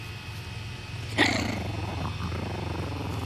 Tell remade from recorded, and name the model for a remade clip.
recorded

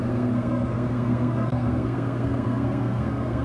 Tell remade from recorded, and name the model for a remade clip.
remade, codec, SNAC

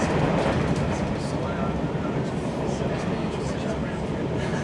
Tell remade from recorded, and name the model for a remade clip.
recorded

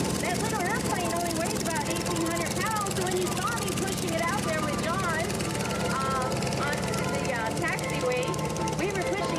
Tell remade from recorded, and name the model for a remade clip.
recorded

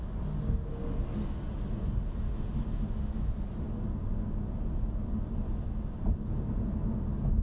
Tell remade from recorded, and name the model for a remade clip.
recorded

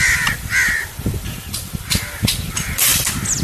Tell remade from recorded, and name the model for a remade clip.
remade, vocoder, BigVGAN v2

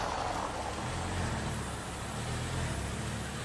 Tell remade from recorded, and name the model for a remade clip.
recorded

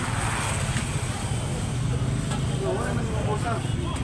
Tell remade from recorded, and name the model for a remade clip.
recorded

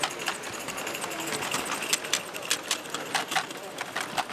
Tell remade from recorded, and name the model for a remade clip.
recorded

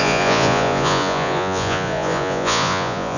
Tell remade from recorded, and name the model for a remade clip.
remade, vocoder, Vocos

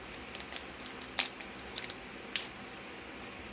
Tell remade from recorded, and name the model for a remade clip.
recorded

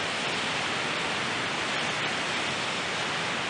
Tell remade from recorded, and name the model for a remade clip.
recorded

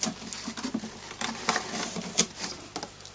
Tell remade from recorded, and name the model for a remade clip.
recorded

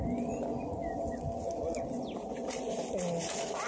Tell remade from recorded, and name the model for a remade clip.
recorded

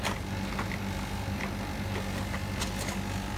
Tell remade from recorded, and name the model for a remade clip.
recorded